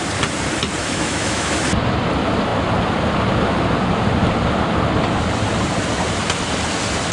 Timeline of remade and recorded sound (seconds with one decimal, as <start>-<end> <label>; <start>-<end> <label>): 0.0-0.8 recorded; 0.8-1.5 remade; 1.5-7.1 recorded